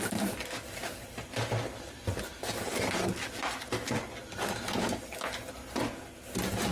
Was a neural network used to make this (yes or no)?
no